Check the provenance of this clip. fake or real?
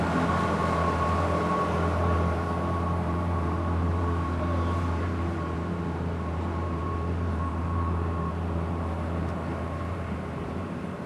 fake